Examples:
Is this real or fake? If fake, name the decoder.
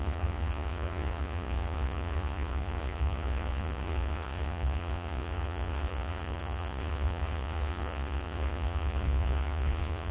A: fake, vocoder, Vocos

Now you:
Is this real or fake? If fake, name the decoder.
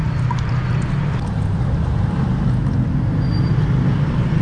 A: real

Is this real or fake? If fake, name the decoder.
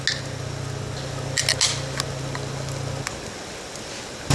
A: real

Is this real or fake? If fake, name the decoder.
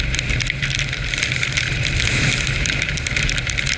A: fake, vocoder, BigVGAN v2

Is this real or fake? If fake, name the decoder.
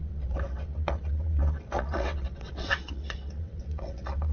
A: fake, vocoder, WaveNeXt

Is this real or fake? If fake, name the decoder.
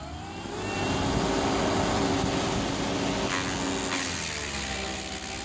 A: real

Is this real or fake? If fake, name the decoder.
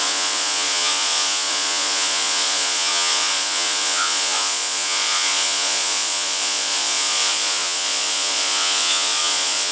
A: fake, vocoder, Vocos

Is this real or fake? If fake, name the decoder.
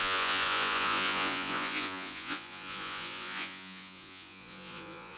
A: fake, vocoder, Vocos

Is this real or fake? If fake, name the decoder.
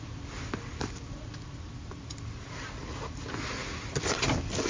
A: real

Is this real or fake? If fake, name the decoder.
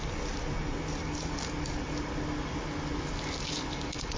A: real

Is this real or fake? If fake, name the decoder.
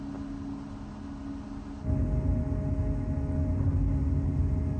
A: real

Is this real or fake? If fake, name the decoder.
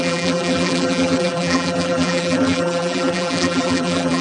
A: fake, vocoder, BigVGAN v2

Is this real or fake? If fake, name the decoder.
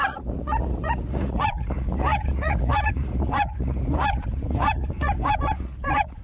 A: fake, vocoder, Vocos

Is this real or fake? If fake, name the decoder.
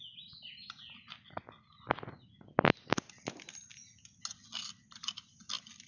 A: real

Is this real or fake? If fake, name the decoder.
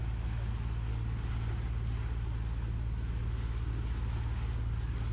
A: real